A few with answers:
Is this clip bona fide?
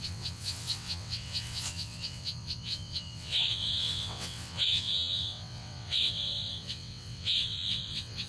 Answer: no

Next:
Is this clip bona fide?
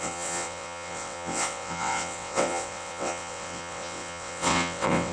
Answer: no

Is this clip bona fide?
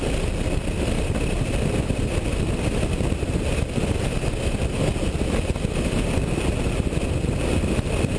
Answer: yes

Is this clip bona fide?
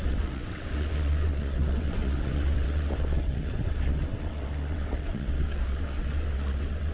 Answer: no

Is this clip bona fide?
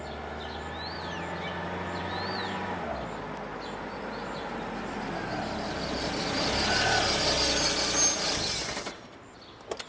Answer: yes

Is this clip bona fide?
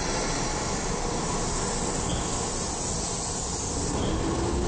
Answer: yes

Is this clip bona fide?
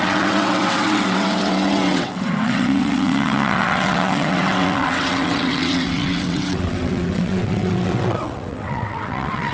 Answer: no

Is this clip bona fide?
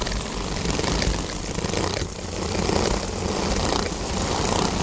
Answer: yes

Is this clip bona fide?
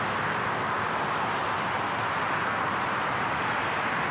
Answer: yes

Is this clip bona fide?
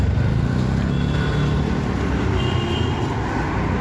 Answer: yes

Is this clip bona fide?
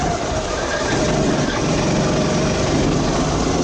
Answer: yes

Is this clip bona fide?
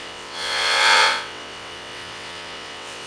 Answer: no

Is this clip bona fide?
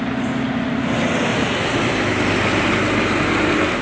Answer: yes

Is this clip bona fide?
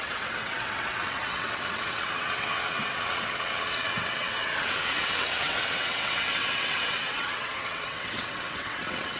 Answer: no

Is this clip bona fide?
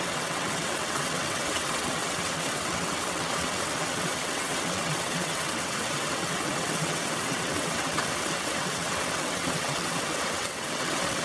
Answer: no